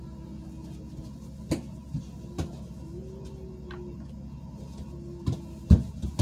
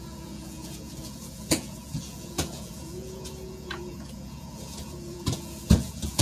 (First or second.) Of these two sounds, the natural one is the first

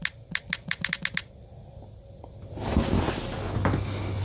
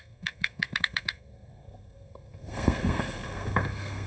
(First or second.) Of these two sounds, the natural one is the first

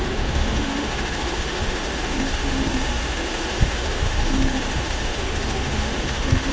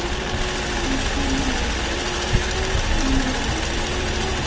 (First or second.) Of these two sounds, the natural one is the second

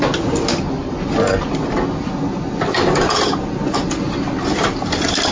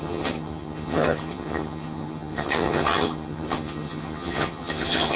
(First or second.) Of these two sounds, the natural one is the first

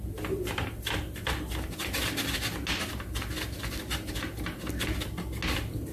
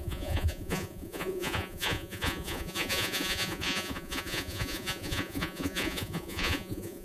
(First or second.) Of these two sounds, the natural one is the first